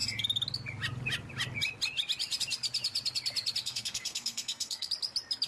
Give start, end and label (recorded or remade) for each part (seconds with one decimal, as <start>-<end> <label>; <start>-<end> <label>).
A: 0.0-3.6 recorded; 3.6-4.9 remade; 4.9-5.5 recorded